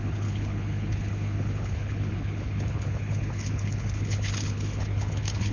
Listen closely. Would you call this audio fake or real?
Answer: fake